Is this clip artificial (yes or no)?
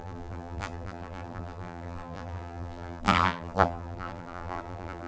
yes